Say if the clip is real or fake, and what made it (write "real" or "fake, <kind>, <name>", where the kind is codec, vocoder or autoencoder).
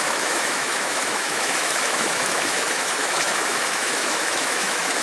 fake, autoencoder, DAC-VAE